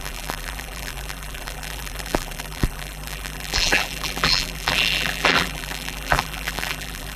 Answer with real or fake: fake